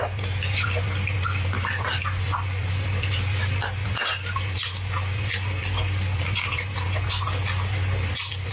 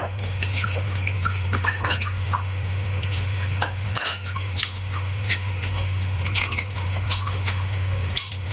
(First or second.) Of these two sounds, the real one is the first